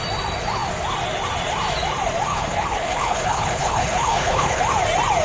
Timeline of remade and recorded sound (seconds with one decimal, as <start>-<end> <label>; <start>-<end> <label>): 0.0-2.3 recorded; 2.3-4.6 remade; 4.6-5.2 recorded